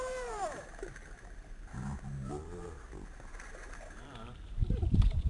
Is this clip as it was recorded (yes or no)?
no